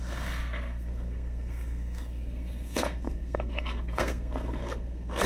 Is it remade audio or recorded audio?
remade